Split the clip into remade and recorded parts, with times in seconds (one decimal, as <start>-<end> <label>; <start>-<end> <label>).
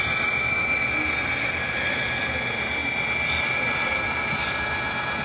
0.0-2.8 remade; 2.8-3.3 recorded; 3.3-5.2 remade